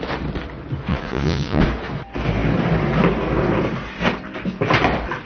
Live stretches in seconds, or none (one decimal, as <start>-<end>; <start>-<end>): 0.0-0.9; 1.6-5.3